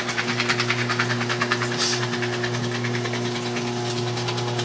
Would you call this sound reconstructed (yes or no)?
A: no